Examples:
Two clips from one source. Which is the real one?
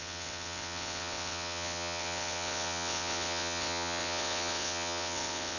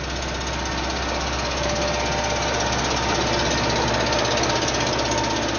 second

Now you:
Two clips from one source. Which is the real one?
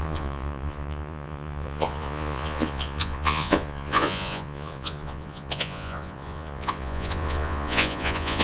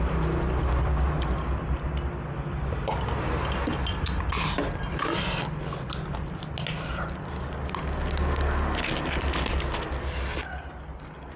second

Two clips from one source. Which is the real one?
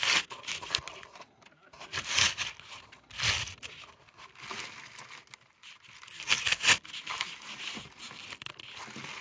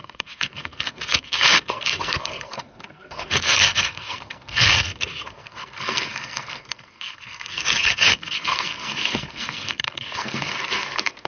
first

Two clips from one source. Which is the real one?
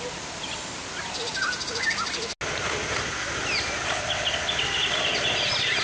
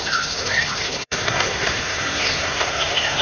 first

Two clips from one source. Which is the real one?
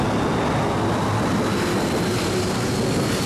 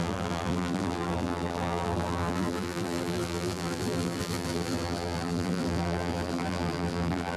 first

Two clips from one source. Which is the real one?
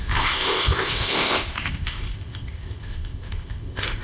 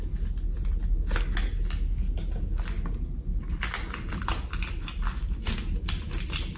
second